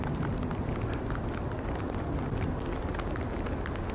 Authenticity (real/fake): real